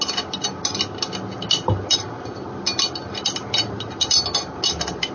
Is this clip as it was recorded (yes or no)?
yes